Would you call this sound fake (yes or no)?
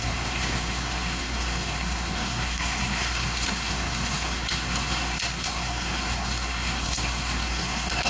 yes